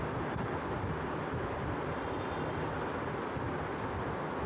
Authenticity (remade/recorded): recorded